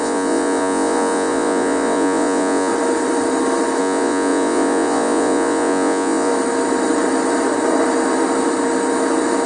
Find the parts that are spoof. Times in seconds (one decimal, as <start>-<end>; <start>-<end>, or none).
0.0-2.7; 3.8-6.3